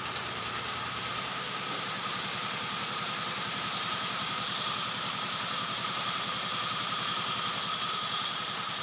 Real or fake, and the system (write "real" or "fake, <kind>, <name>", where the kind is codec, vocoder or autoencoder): fake, vocoder, BigVGAN v2